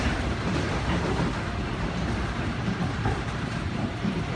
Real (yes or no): no